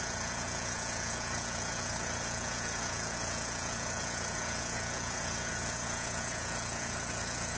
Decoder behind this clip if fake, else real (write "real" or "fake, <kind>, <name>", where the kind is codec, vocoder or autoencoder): fake, vocoder, Vocos